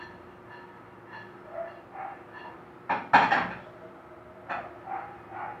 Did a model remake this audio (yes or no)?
no